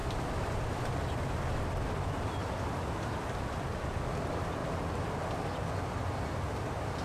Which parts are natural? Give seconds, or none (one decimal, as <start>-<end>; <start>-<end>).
3.6-7.0